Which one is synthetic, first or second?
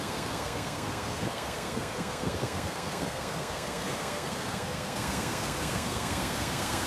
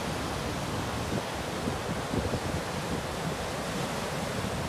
first